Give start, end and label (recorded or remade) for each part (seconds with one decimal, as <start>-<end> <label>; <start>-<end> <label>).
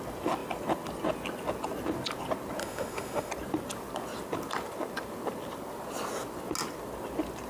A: 0.0-2.6 recorded; 2.6-3.3 remade; 3.3-7.5 recorded